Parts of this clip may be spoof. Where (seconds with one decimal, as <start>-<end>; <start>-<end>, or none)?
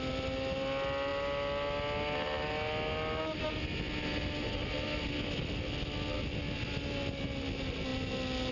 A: none